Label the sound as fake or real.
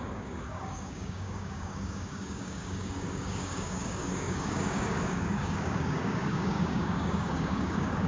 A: fake